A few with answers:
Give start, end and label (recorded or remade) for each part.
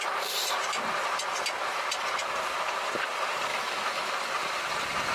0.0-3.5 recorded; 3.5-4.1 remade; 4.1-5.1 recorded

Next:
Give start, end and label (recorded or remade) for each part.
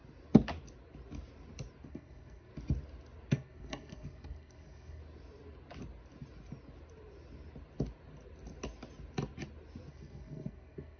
0.0-1.9 recorded; 1.9-2.5 remade; 2.5-3.3 recorded; 3.3-5.0 remade; 5.0-9.9 recorded; 9.9-11.0 remade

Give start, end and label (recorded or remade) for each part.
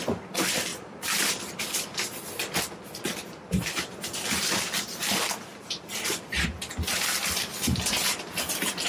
0.0-0.7 recorded; 0.7-1.7 remade; 1.7-2.4 recorded; 2.4-4.0 remade; 4.0-5.5 recorded; 5.5-6.3 remade; 6.3-8.9 recorded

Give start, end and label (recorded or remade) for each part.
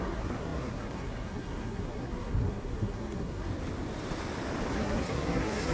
0.0-3.5 remade; 3.5-4.7 recorded; 4.7-5.7 remade